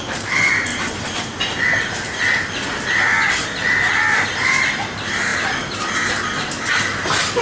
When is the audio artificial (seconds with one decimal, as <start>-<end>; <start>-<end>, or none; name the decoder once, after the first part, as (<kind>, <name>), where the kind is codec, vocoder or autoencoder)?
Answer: 0.7-1.4 (vocoder, BigVGAN v2)